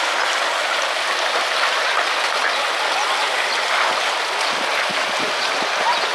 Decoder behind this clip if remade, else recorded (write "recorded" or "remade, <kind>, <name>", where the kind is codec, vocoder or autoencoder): recorded